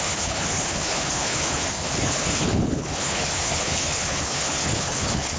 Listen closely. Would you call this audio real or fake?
fake